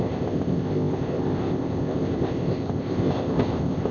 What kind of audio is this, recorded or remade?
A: remade